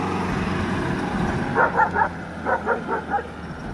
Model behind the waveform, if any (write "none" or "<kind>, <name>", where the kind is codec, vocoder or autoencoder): none